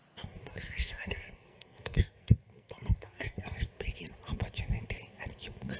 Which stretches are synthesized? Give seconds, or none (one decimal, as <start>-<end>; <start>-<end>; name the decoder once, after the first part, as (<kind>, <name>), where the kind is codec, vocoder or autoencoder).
0.5-3.7 (codec, SNAC)